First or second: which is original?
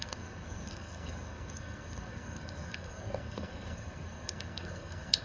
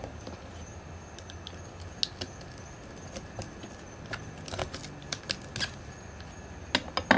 second